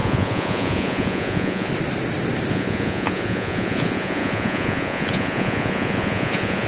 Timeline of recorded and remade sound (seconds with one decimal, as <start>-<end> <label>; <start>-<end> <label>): 0.0-1.7 remade; 1.7-2.5 recorded; 2.5-6.7 remade